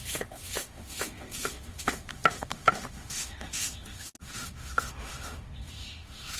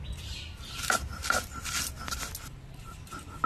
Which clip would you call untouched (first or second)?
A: second